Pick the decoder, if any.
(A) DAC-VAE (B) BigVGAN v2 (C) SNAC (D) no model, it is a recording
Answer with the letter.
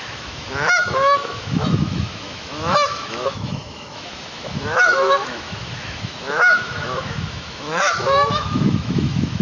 A